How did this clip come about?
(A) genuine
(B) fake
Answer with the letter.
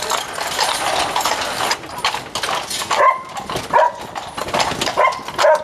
A